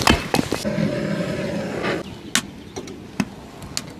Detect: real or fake real